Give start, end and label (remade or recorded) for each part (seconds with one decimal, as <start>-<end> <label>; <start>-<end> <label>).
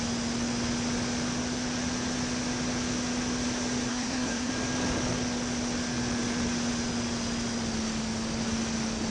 0.0-3.9 recorded; 3.9-4.5 remade; 4.5-9.1 recorded